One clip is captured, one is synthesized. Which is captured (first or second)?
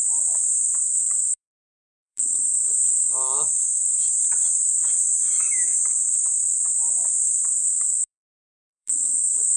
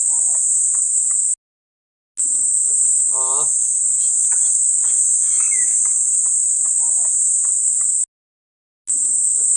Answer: second